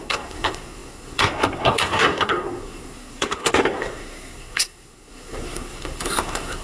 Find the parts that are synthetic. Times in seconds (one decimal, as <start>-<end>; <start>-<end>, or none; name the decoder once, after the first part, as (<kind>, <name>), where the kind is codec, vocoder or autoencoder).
0.0-6.6 (codec, SNAC)